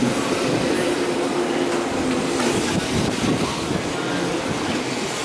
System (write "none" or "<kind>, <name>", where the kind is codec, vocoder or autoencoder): none